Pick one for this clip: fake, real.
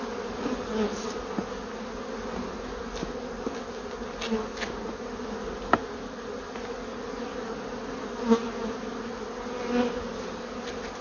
real